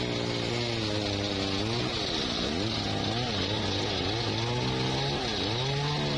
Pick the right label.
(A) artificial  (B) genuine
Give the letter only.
B